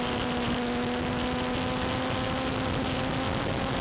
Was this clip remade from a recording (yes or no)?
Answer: no